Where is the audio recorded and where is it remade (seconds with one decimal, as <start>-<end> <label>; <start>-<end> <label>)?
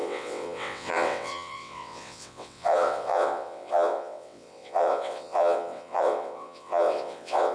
0.0-7.5 remade